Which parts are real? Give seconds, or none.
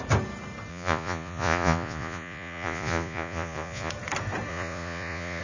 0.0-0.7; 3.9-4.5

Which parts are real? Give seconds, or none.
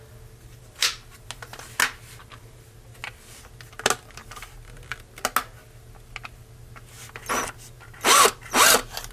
0.0-9.1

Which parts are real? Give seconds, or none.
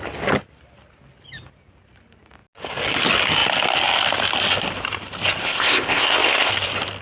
0.0-5.4; 6.5-7.0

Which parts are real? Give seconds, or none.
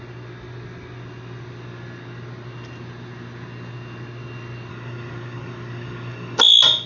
0.0-4.7; 6.4-6.9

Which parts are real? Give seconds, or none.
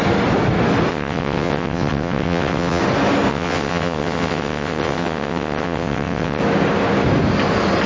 0.0-0.9; 2.8-3.3; 6.4-7.9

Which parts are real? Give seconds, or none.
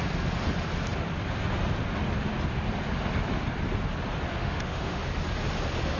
0.0-4.4; 5.0-6.0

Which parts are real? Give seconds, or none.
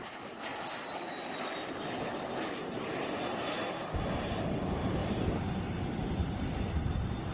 0.0-0.5; 1.8-5.0